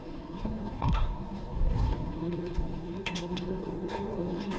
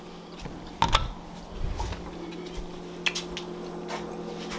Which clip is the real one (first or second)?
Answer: second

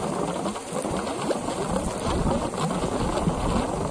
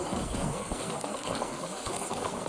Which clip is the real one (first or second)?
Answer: first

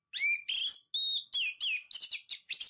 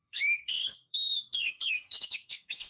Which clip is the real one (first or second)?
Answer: first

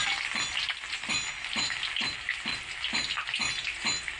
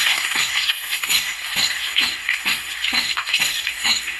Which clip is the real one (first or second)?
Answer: first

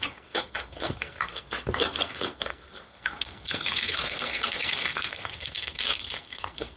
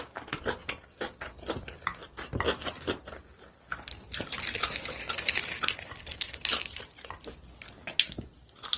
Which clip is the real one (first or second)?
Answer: second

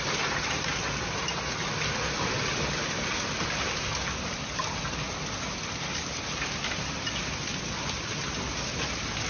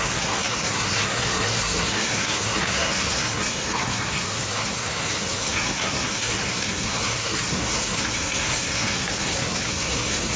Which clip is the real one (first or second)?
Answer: first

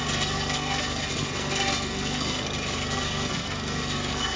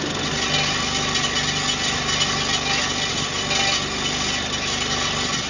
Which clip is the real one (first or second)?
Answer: second